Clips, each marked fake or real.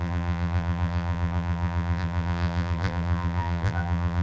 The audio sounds fake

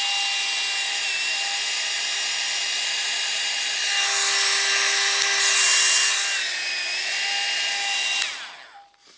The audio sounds real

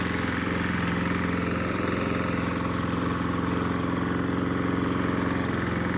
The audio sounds fake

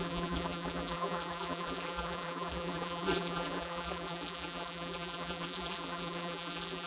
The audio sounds fake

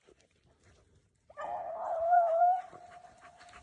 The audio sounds fake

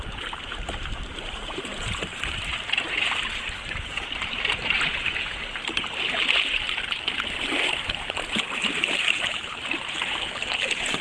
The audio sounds fake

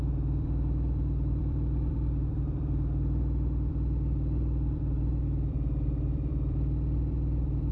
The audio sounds fake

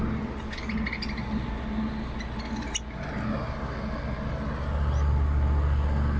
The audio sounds real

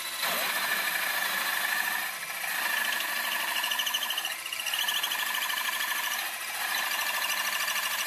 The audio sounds real